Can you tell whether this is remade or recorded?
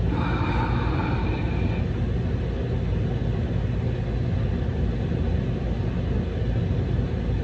recorded